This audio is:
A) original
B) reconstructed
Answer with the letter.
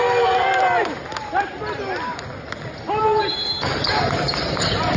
A